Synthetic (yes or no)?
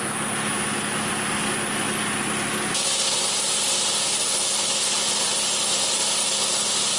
no